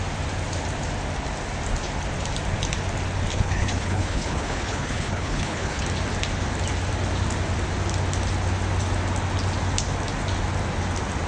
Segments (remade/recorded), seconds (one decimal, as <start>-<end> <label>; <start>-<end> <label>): 0.0-3.3 recorded; 3.3-5.8 remade; 5.8-11.3 recorded